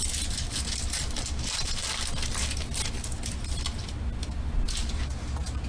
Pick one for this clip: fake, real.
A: real